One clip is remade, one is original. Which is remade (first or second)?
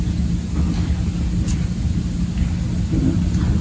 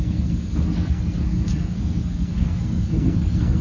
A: second